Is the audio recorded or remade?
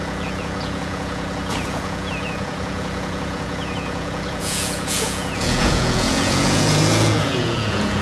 remade